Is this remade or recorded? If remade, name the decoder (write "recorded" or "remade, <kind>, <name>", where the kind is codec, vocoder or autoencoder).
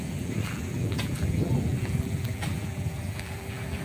remade, vocoder, BigVGAN v2